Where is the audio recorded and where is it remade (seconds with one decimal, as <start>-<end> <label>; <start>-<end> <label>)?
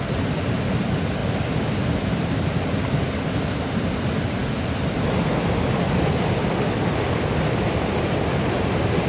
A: 0.0-9.1 recorded